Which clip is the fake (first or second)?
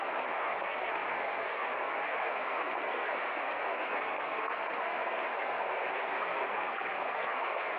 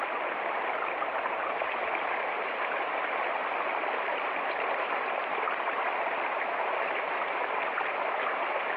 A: first